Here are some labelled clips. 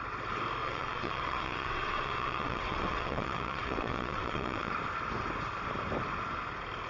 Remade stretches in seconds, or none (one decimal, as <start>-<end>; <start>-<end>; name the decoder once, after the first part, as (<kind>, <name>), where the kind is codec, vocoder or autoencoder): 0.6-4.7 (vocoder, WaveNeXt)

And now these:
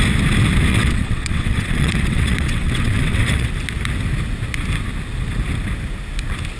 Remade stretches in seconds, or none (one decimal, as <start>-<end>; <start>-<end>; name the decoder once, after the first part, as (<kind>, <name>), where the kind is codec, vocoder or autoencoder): 0.7-3.5 (vocoder, WaveNeXt)

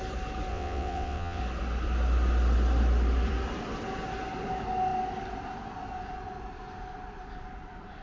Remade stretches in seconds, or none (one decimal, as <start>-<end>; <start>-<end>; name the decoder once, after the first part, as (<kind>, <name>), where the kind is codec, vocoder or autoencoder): 0.5-1.4 (vocoder, WaveNeXt)

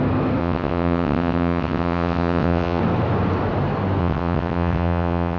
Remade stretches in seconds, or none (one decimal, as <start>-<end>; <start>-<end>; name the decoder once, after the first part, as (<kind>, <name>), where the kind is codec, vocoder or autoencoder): 0.4-2.8 (vocoder, WaveNeXt); 4.0-5.4

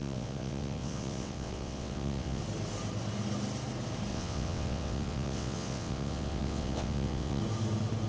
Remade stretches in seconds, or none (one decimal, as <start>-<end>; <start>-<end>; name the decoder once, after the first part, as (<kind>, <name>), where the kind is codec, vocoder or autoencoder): 0.0-2.4 (vocoder, WaveNeXt); 4.1-7.4

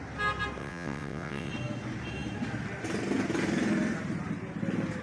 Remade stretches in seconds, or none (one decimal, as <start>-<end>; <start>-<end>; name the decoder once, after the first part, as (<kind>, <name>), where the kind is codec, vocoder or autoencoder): 0.6-1.5 (vocoder, WaveNeXt)